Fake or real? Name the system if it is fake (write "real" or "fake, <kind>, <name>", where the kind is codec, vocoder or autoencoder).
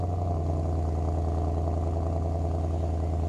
real